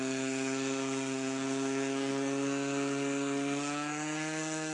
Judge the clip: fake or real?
fake